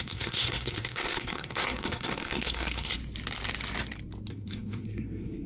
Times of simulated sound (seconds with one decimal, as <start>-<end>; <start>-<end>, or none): 0.0-3.0; 4.3-5.5